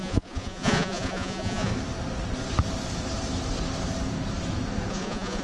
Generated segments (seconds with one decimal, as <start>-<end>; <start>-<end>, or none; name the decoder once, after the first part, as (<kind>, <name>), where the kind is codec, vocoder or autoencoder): 0.0-1.7 (vocoder, Vocos); 4.9-5.4